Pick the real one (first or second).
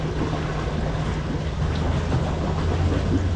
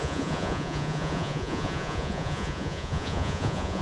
first